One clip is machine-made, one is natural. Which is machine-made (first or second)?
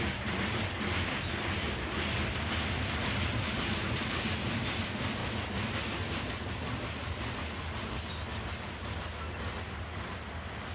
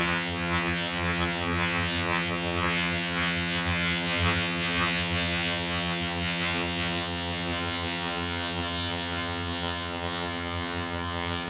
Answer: second